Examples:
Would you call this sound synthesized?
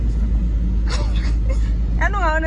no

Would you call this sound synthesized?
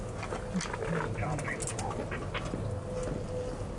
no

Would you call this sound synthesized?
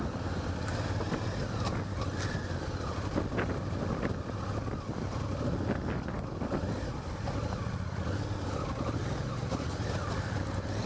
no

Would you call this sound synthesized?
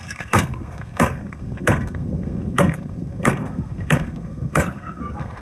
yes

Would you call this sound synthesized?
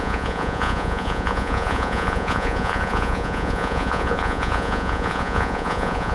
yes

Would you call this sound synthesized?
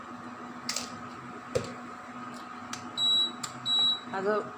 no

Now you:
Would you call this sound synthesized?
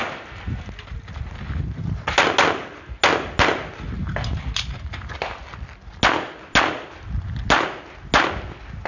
no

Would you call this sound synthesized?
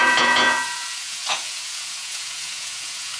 yes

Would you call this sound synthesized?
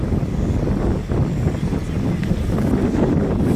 no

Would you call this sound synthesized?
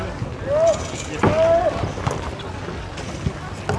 no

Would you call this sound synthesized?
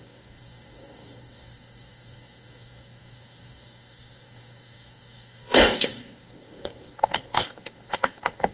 yes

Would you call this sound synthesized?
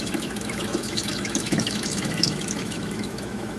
yes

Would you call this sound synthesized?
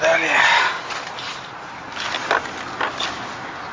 no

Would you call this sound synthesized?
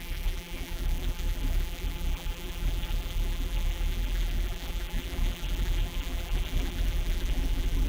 yes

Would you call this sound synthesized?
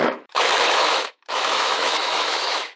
yes